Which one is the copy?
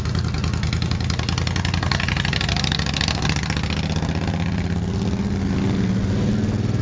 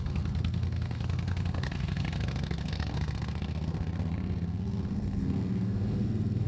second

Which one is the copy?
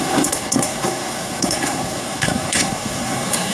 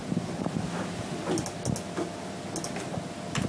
first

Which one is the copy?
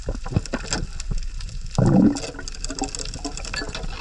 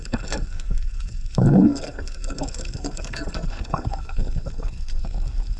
second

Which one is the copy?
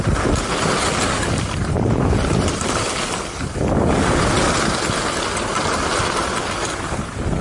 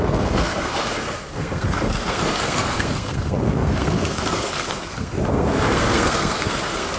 second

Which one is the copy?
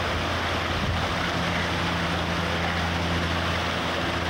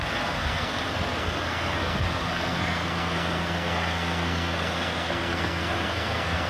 second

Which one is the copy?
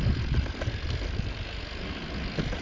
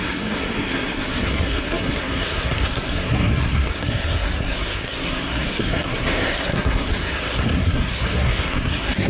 second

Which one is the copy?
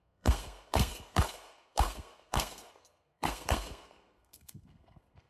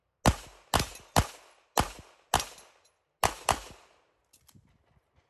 first